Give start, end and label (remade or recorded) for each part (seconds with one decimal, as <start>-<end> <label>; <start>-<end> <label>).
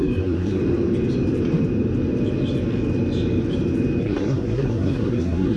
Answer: 0.0-0.6 remade; 0.6-4.0 recorded; 4.0-5.6 remade